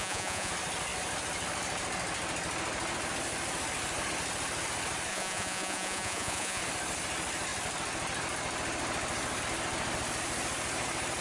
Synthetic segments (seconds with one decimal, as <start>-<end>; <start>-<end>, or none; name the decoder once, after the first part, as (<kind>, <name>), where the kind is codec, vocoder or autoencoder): 0.0-0.5 (vocoder, Vocos); 5.1-6.6